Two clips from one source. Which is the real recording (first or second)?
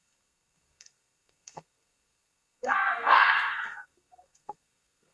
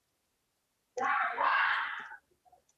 second